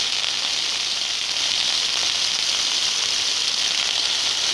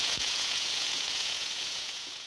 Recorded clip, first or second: first